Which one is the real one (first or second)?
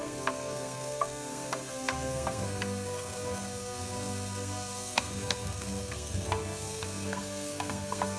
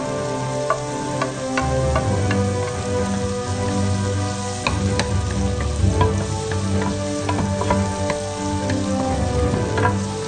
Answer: second